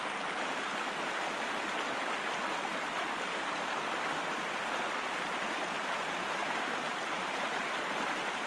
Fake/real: real